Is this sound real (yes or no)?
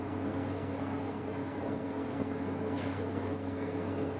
no